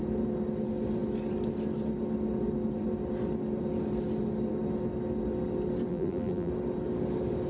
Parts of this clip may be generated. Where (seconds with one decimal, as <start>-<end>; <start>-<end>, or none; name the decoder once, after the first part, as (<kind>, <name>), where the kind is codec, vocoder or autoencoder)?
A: 5.9-6.5 (vocoder, BigVGAN v2)